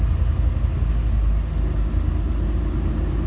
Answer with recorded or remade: recorded